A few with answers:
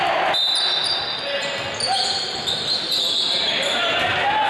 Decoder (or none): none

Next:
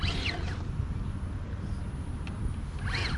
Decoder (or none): none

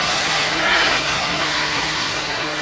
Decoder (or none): codec, SNAC